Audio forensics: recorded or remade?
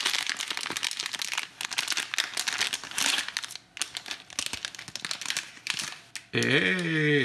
recorded